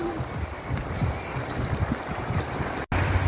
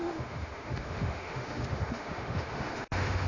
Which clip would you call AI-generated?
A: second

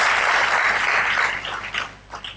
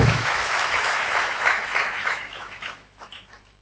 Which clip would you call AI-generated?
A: second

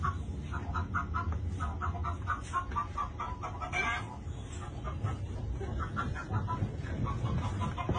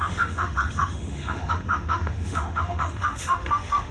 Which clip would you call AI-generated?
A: second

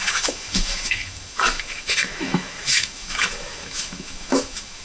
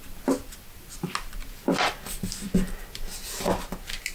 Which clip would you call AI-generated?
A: first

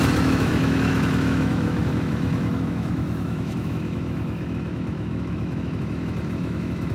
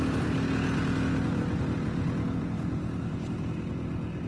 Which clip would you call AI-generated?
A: first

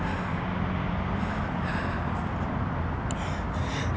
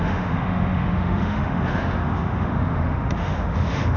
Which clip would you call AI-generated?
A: second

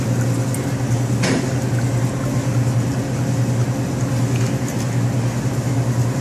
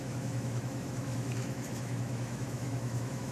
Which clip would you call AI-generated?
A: second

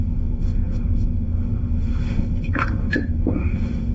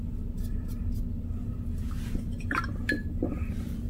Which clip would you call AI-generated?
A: first